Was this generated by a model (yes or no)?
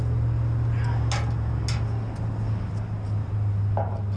no